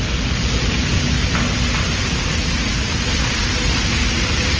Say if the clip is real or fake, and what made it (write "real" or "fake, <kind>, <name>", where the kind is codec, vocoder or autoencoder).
real